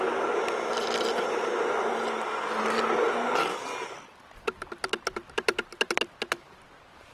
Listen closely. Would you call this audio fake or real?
real